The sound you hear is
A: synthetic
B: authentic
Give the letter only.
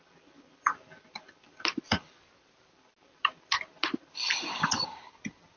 B